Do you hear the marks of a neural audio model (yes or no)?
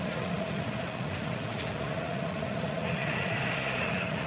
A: yes